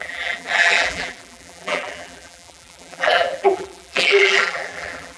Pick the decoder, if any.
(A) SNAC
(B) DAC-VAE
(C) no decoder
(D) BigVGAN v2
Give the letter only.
D